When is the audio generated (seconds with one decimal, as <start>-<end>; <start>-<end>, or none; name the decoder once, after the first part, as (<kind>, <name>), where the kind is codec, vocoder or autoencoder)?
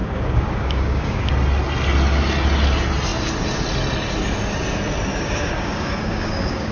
0.0-1.3 (codec, DAC); 5.1-6.7